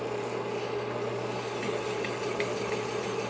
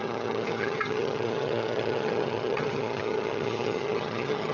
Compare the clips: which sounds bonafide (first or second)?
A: first